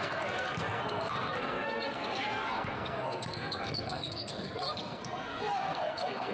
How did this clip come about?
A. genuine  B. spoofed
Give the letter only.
B